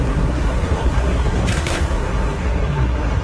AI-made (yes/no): yes